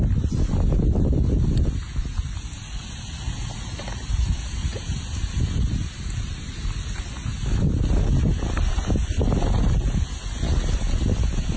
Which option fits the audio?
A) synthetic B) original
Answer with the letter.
B